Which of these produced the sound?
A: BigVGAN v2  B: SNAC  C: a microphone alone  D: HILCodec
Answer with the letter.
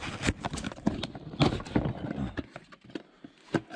C